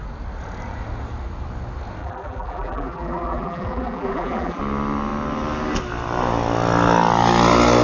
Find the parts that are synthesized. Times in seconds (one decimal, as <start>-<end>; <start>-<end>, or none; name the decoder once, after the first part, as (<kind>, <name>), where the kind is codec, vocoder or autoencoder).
2.0-4.6 (vocoder, BigVGAN v2)

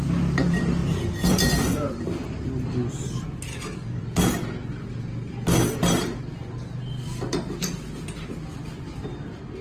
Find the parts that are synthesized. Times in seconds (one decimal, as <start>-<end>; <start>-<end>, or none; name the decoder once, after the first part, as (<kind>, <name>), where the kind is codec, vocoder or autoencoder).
3.5-4.0 (codec, DAC)

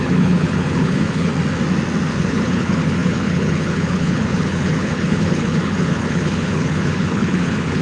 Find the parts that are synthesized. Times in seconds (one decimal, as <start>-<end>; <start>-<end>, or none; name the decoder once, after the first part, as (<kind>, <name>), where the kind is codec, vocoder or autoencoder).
0.0-1.3 (codec, HILCodec); 2.1-7.8

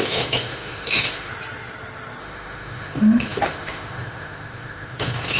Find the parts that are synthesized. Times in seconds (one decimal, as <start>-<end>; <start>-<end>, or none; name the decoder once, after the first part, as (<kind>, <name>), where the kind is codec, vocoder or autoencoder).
0.0-1.3 (autoencoder, DAC-VAE); 2.2-5.4

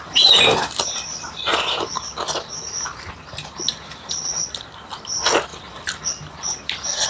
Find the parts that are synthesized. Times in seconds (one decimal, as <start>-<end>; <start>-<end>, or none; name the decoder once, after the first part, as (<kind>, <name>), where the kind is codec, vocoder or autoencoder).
5.5-6.1 (vocoder, BigVGAN v2)

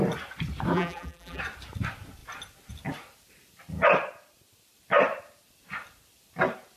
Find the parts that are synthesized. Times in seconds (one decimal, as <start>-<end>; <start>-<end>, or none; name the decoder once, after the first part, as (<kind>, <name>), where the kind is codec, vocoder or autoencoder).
0.7-1.4 (vocoder, BigVGAN v2)

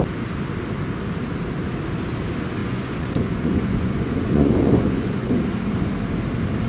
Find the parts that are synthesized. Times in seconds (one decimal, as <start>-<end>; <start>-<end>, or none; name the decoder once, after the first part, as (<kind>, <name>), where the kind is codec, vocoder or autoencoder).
2.6-5.4 (vocoder, Vocos)